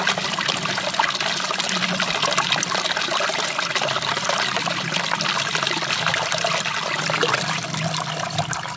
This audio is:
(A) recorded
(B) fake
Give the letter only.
A